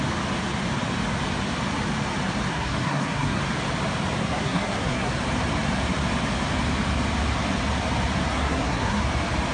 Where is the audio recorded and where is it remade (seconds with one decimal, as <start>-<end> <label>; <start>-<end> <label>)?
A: 0.0-2.5 recorded; 2.5-3.4 remade; 3.4-4.2 recorded; 4.2-5.1 remade; 5.1-8.3 recorded; 8.3-9.0 remade; 9.0-9.5 recorded